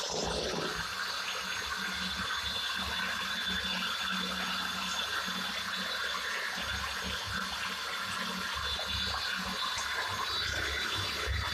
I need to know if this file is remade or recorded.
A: recorded